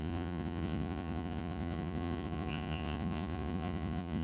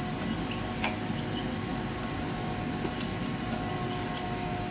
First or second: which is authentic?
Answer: second